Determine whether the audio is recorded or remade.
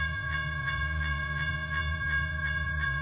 remade